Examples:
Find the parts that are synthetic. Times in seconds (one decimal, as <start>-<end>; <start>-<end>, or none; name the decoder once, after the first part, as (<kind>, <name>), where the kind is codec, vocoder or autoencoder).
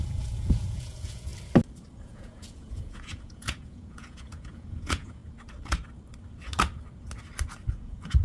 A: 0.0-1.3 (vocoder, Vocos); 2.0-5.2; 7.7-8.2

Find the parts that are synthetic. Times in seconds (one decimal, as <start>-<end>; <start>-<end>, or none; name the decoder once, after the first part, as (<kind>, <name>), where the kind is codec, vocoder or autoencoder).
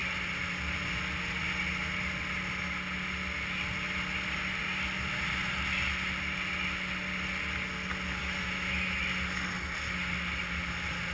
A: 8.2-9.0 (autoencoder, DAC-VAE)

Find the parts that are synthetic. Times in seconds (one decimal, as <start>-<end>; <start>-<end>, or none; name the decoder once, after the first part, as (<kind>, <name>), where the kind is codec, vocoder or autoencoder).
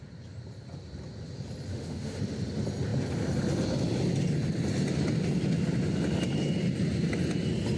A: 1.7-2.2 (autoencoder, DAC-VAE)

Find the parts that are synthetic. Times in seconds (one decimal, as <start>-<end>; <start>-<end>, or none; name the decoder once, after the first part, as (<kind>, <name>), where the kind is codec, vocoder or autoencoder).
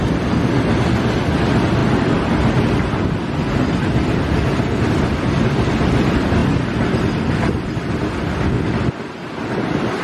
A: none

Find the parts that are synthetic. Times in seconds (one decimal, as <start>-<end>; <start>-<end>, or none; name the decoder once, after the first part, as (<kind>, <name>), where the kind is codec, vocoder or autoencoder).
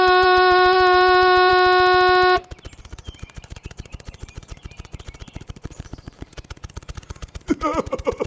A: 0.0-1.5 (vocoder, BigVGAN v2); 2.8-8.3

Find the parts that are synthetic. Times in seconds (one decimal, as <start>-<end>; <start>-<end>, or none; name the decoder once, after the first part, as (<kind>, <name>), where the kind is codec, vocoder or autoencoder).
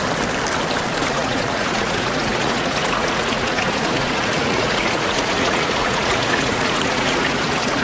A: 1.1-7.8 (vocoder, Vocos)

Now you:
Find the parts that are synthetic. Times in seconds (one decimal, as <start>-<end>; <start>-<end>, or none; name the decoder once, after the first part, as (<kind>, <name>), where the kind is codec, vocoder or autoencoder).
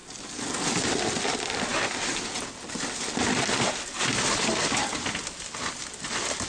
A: none